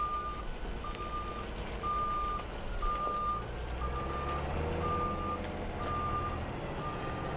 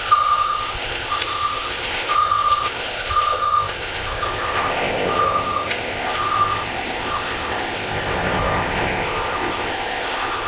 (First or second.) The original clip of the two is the first